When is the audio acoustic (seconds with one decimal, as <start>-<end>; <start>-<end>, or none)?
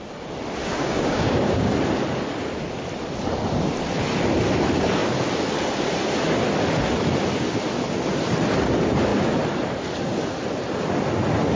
0.0-0.6; 1.7-11.6